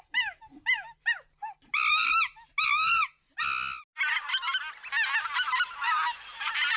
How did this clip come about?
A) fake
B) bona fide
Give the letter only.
B